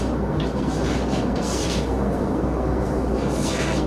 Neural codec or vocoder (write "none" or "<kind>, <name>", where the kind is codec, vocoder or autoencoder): codec, SNAC